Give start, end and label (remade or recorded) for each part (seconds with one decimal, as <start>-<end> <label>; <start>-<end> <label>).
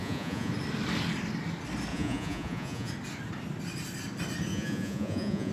0.0-0.5 remade; 0.5-1.9 recorded; 1.9-2.9 remade; 2.9-4.5 recorded; 4.5-5.5 remade